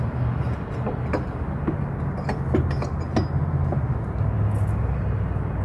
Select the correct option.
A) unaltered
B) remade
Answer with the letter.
A